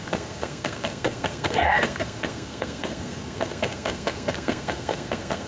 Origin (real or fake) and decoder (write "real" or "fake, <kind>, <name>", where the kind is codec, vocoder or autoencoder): fake, codec, SNAC